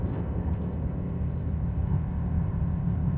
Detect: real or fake fake